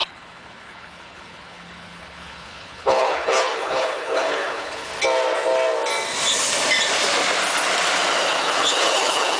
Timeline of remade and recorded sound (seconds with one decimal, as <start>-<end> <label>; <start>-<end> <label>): 0.0-4.9 remade; 4.9-8.4 recorded; 8.4-9.4 remade